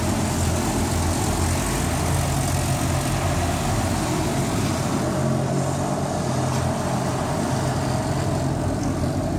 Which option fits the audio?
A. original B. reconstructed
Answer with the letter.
A